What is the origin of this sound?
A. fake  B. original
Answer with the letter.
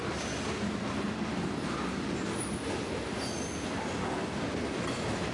B